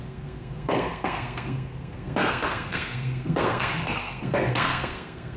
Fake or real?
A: fake